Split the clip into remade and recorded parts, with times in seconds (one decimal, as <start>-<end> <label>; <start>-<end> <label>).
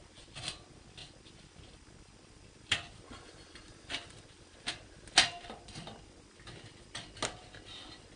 0.0-8.2 recorded